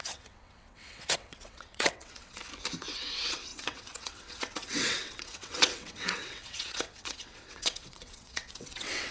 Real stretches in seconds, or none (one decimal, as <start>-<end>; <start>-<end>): 2.4-2.9